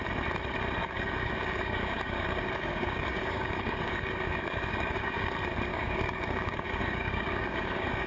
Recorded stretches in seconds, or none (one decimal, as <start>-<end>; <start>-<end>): 0.0-0.8; 5.3-5.7